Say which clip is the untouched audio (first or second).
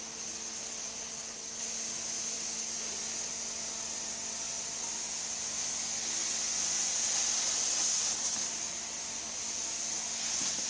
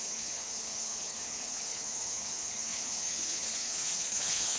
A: first